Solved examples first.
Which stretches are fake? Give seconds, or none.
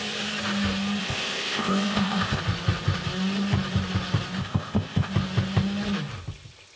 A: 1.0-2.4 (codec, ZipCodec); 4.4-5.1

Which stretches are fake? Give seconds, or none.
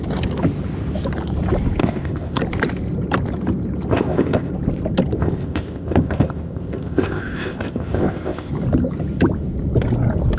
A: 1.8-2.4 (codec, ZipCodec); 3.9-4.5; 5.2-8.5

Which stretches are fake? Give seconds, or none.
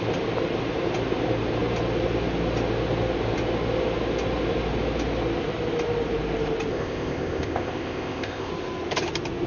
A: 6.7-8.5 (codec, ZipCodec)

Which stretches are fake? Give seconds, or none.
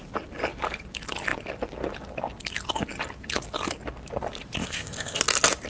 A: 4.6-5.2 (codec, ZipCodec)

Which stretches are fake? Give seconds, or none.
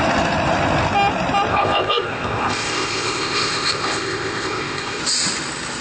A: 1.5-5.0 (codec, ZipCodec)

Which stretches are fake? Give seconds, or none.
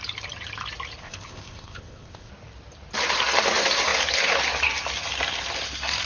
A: 1.0-2.3 (codec, ZipCodec)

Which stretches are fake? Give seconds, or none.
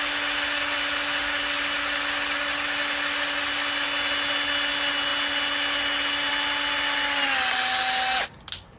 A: none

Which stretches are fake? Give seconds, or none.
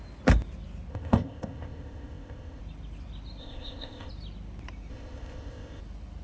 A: 0.9-2.6 (codec, ZipCodec); 3.4-4.1; 4.9-5.8